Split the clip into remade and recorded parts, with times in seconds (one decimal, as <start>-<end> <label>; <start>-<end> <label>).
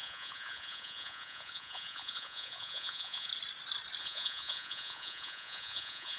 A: 0.0-3.3 remade; 3.3-4.0 recorded; 4.0-6.2 remade